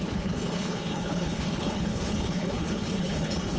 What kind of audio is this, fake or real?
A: fake